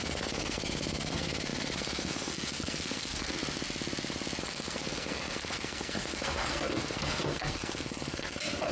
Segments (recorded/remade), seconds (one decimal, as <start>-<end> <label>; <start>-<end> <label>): 0.0-3.4 remade; 3.4-4.4 recorded; 4.4-8.7 remade